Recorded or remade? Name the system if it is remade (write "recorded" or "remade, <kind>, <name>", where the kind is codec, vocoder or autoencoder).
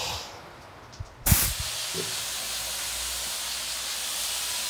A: recorded